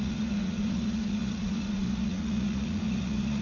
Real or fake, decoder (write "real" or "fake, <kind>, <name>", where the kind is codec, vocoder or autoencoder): fake, vocoder, Vocos